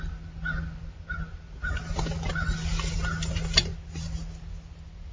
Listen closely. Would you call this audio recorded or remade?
recorded